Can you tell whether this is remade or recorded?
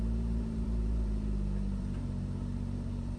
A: remade